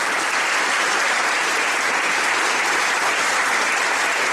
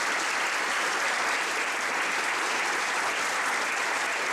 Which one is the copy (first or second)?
first